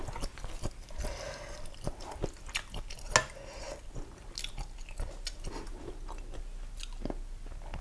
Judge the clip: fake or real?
real